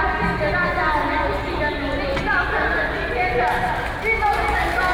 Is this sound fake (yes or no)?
no